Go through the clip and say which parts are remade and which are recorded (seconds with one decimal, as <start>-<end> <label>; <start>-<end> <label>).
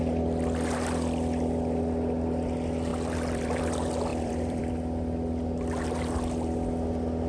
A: 0.0-2.9 recorded; 2.9-3.6 remade; 3.6-4.1 recorded; 4.1-4.7 remade; 4.7-7.3 recorded